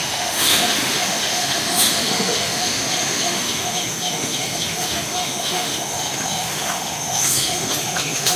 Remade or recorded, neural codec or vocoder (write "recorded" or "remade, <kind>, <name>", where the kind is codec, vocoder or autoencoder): remade, autoencoder, DAC-VAE